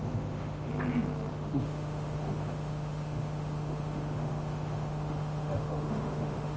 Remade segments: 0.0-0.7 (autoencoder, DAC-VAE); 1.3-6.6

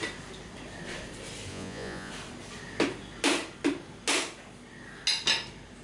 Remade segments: 1.5-2.1 (vocoder, Vocos)

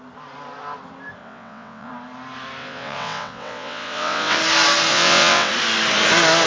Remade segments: 1.2-1.9 (vocoder, WaveNeXt); 2.6-4.4; 4.9-5.5